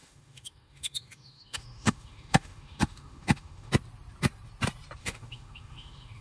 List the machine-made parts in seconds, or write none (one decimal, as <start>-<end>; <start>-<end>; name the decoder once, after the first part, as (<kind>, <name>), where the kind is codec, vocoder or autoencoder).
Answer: 0.0-3.7 (autoencoder, DAC-VAE); 5.0-6.2